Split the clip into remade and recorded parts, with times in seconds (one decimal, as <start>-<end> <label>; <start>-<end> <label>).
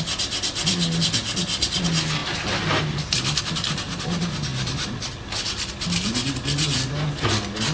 0.0-7.7 recorded